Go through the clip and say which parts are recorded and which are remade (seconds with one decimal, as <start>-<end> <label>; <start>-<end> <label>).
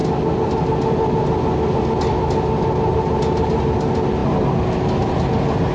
0.0-5.7 recorded